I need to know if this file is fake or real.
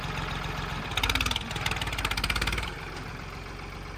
real